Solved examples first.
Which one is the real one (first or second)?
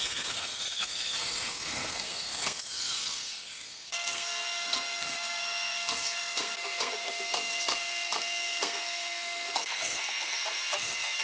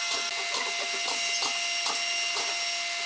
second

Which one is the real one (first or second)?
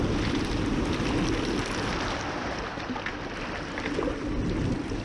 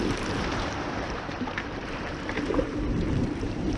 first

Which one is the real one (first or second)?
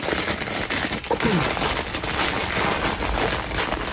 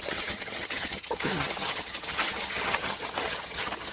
first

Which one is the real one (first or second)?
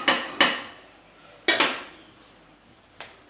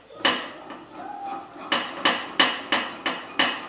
first